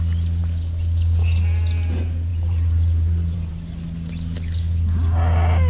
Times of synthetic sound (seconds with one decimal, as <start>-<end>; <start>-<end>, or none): 2.3-3.5